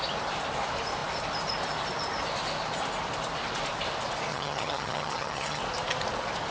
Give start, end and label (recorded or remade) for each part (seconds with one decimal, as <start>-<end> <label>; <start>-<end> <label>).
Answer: 0.0-4.3 recorded; 4.3-5.6 remade; 5.6-6.5 recorded